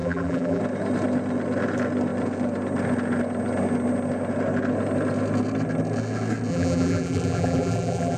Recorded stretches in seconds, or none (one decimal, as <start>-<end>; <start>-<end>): 0.6-6.5